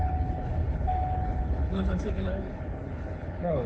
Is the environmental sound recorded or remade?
remade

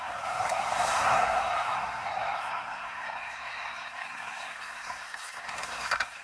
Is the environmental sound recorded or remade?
remade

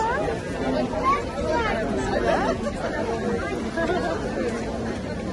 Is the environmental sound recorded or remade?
recorded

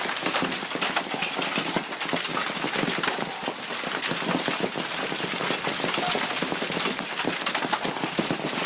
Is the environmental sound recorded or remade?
recorded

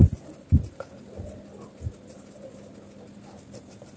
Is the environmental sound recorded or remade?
recorded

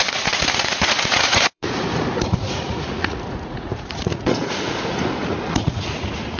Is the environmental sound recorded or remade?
remade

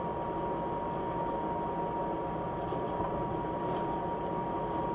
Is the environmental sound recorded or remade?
recorded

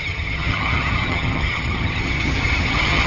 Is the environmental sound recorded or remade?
remade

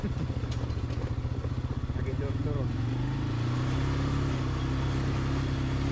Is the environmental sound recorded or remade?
recorded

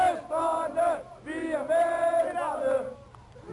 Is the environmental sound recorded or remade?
remade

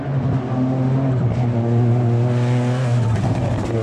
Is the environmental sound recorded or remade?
recorded